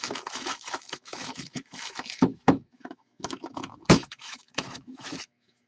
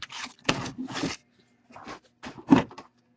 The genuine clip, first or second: second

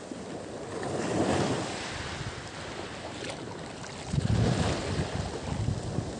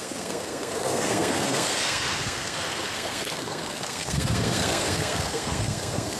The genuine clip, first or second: first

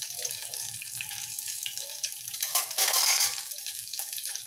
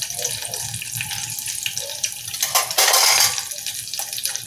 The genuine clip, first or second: second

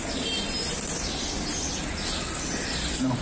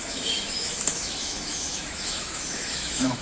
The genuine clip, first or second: first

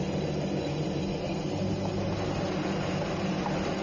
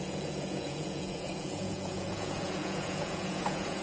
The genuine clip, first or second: first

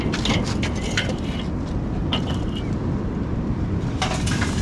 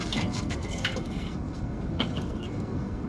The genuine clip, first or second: first